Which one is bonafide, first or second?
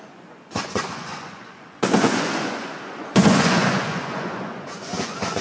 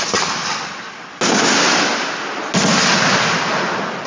second